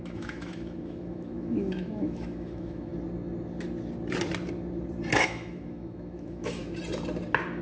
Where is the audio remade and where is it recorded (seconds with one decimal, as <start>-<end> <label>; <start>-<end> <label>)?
0.0-2.9 remade; 2.9-5.2 recorded; 5.2-6.6 remade; 6.6-7.6 recorded